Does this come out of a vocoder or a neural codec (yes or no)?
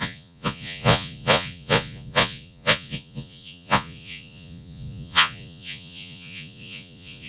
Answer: yes